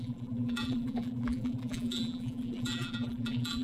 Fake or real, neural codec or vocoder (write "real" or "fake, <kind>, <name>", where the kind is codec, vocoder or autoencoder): fake, vocoder, BigVGAN v2